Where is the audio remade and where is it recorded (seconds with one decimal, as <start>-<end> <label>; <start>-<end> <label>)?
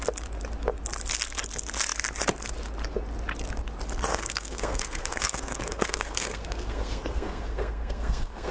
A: 0.0-4.1 recorded; 4.1-8.5 remade